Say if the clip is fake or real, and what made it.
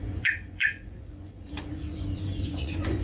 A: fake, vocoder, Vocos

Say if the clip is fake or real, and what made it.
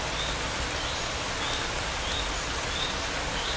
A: real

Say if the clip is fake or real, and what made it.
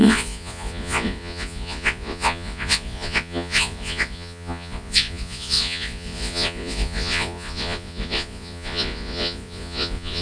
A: fake, vocoder, Vocos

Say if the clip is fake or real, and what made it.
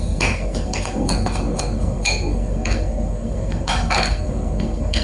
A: fake, codec, SNAC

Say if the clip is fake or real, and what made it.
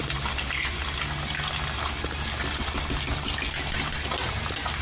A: real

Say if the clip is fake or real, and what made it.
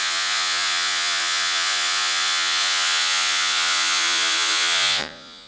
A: fake, vocoder, Vocos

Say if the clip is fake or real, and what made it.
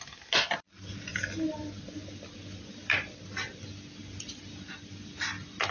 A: real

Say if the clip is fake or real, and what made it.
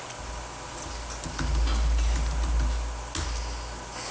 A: real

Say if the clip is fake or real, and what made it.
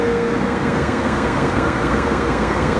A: fake, codec, SNAC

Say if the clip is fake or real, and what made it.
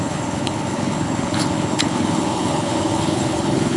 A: fake, codec, HILCodec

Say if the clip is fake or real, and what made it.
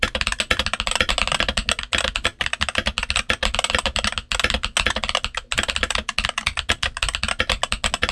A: real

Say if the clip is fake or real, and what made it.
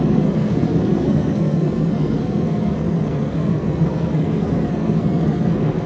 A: fake, codec, SNAC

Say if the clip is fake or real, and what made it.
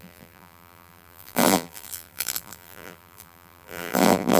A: fake, vocoder, BigVGAN v2